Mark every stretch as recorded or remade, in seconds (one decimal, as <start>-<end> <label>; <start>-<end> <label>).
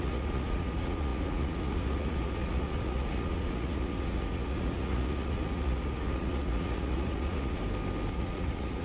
0.0-7.6 remade; 7.6-8.1 recorded; 8.1-8.8 remade